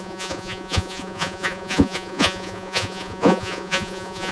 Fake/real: fake